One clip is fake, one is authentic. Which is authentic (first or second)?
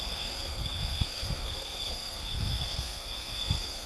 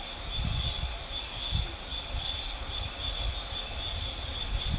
second